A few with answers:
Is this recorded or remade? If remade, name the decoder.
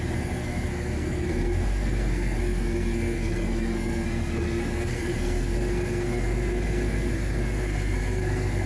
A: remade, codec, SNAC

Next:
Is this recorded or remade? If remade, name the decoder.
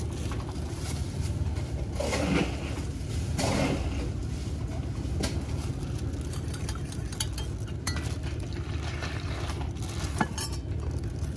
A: recorded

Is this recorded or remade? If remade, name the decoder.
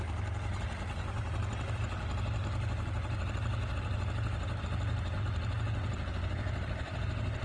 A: recorded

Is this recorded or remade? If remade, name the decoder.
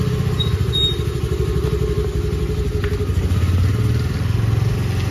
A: recorded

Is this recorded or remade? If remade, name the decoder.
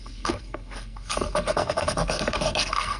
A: remade, codec, SNAC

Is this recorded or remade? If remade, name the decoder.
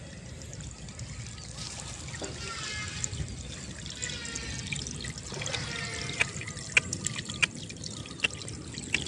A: recorded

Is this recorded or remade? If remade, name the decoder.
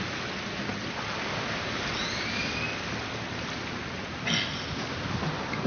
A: recorded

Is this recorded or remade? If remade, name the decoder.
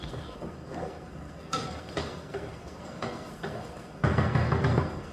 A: remade, codec, SNAC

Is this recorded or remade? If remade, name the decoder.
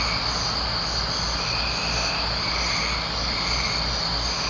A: recorded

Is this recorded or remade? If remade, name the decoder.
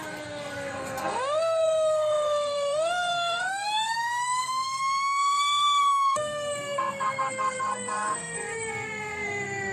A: remade, codec, SNAC